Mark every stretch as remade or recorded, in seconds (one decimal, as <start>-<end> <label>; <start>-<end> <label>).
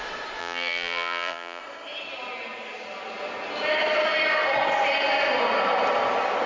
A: 0.0-0.4 recorded; 0.4-1.6 remade; 1.6-6.5 recorded